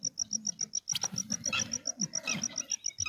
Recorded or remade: recorded